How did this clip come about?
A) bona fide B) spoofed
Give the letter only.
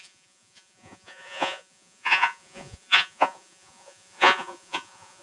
B